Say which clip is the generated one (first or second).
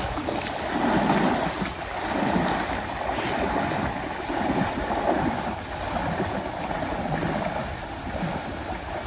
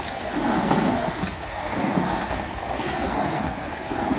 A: second